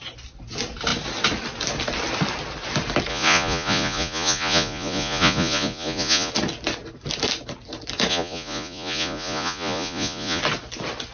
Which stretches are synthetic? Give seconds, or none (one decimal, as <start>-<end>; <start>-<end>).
3.1-6.3; 8.1-10.4